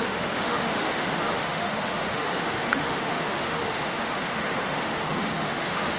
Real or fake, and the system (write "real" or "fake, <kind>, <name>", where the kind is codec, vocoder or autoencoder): fake, autoencoder, DAC-VAE